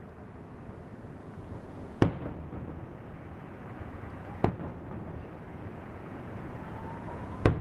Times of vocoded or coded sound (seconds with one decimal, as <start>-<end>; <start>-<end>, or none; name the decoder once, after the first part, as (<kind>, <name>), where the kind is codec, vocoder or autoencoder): 1.2-4.5 (vocoder, Vocos); 5.5-7.6